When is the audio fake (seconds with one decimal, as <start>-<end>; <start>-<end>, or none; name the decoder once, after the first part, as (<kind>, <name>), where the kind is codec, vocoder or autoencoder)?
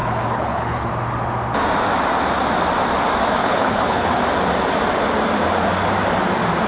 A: 0.0-0.9 (codec, HILCodec); 3.4-4.2